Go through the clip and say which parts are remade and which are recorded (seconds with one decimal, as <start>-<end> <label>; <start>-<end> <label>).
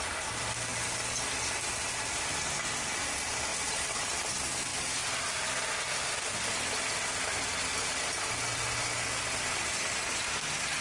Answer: 0.0-10.8 recorded